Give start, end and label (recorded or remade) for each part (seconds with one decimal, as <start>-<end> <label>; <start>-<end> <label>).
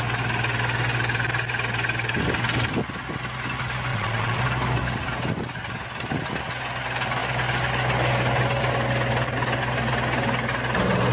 0.0-3.9 recorded; 3.9-4.4 remade; 4.4-11.1 recorded